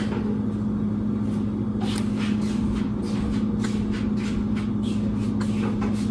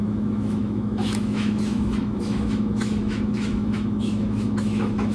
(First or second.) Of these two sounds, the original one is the first